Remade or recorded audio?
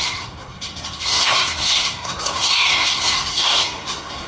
remade